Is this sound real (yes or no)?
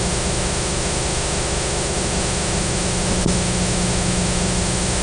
no